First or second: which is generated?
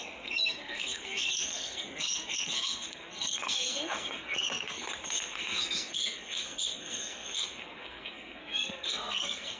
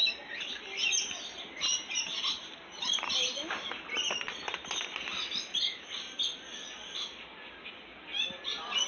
first